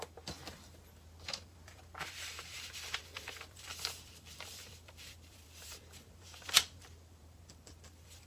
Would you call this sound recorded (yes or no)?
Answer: no